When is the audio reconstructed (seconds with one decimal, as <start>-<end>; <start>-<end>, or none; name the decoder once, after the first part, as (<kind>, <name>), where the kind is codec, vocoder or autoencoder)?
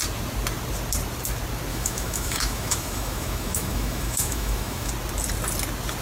1.7-4.9 (autoencoder, DAC-VAE)